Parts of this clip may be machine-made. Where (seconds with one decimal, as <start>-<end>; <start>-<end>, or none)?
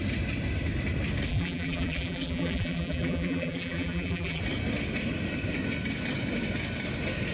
1.3-4.4